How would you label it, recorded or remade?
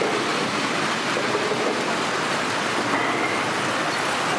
recorded